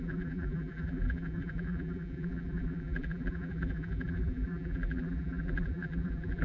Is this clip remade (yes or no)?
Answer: yes